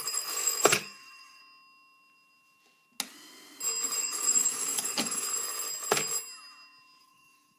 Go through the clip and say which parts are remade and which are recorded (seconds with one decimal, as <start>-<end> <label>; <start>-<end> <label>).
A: 0.0-1.4 remade; 1.4-4.0 recorded; 4.0-5.3 remade; 5.3-7.0 recorded; 7.0-7.6 remade